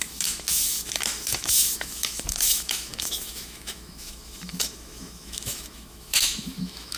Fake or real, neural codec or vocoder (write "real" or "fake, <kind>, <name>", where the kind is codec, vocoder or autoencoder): fake, autoencoder, DAC-VAE